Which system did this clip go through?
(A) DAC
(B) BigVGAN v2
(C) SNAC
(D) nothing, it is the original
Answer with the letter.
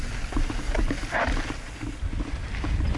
D